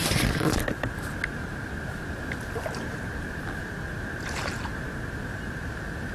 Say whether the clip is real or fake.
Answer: real